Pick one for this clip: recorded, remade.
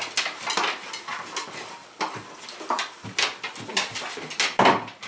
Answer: recorded